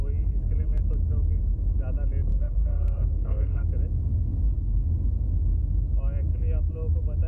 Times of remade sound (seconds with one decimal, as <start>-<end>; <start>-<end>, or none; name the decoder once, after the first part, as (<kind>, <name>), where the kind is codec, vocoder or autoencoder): 2.3-3.6 (codec, SNAC); 4.1-4.9